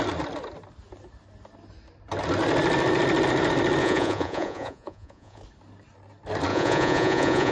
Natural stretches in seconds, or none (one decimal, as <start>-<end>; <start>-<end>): 0.0-3.8; 5.4-6.5

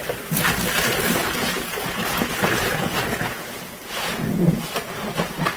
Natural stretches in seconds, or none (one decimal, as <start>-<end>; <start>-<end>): 0.0-1.2; 4.6-5.6

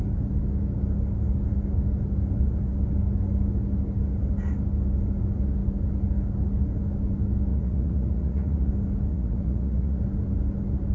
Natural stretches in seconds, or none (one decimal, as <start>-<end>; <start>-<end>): 0.0-7.5; 8.7-9.1; 10.0-10.9

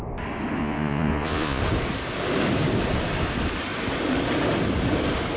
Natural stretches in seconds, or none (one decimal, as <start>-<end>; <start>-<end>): 0.0-0.6; 1.6-5.4

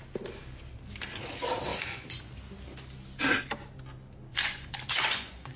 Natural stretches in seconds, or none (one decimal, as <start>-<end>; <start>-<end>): 0.0-1.7; 2.2-4.3

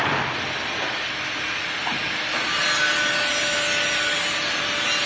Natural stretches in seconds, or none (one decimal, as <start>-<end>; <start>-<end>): 0.0-5.1

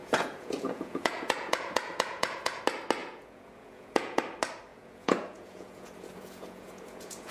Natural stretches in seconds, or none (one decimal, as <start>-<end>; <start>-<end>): 2.6-3.0; 4.2-4.7